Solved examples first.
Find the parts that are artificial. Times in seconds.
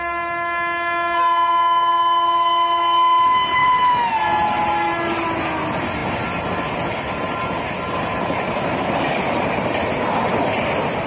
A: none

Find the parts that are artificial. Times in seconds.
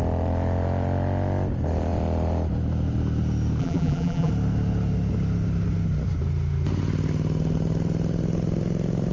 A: 3.6-4.3 (vocoder, BigVGAN v2)